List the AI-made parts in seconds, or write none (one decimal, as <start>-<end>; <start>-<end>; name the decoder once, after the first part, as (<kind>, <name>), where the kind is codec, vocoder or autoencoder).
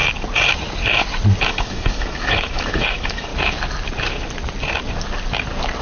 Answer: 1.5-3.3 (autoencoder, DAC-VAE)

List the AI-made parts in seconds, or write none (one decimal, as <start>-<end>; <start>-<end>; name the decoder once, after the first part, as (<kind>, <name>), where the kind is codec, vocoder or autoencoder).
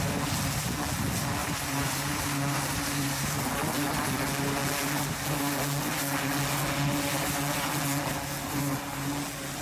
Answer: 1.4-3.4 (vocoder, BigVGAN v2)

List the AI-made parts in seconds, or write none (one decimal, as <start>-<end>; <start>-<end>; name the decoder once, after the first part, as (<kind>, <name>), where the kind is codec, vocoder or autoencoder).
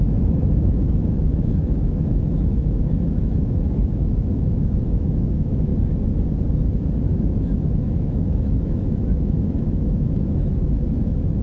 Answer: 0.0-5.7 (autoencoder, DAC-VAE); 7.0-11.4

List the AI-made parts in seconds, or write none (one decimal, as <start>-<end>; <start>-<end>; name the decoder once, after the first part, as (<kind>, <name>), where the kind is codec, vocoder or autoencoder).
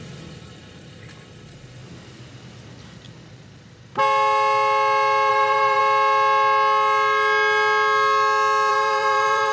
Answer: 0.0-1.8 (vocoder, BigVGAN v2); 5.3-5.8; 8.7-9.5